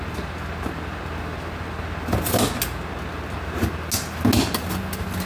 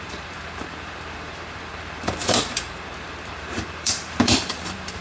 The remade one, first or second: second